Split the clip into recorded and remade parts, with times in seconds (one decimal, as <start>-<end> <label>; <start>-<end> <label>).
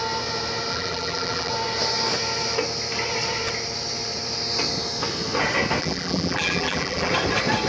0.0-0.7 recorded; 0.7-1.5 remade; 1.5-5.8 recorded; 5.8-7.1 remade; 7.1-7.7 recorded